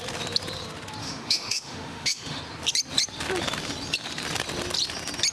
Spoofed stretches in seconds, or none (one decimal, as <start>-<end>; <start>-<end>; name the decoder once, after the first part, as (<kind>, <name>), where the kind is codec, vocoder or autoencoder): 1.0-2.4 (autoencoder, DAC-VAE)